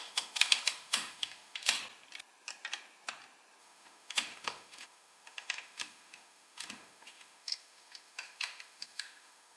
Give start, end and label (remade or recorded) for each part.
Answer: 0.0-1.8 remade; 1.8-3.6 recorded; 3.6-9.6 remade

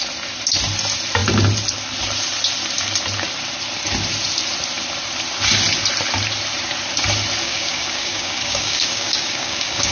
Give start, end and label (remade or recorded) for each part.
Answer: 0.0-7.4 recorded; 7.4-9.9 remade

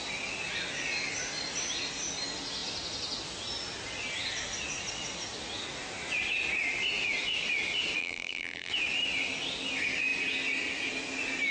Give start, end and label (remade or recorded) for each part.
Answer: 0.0-8.0 recorded; 8.0-8.7 remade; 8.7-11.5 recorded

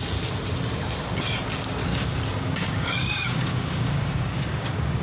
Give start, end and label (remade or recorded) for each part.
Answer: 0.0-1.9 recorded; 1.9-5.0 remade

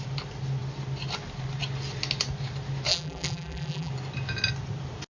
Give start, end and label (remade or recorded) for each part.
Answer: 0.0-2.9 recorded; 2.9-3.9 remade; 3.9-5.1 recorded

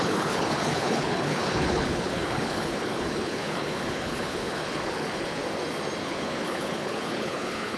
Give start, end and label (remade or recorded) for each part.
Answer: 0.0-5.4 remade; 5.4-6.0 recorded; 6.0-7.8 remade